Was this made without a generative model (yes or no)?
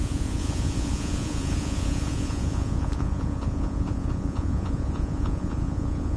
no